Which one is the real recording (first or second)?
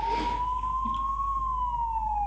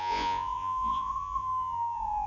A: first